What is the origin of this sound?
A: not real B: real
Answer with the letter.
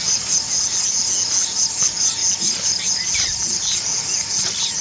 B